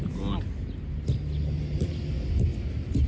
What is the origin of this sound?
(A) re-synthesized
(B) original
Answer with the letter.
B